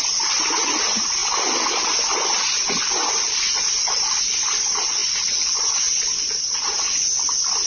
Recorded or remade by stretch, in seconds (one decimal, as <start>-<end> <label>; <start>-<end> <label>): 0.0-7.7 recorded